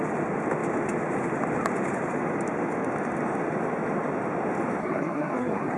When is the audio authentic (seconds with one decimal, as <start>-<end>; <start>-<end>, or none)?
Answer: 0.0-4.8